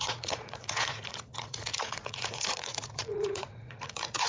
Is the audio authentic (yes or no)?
no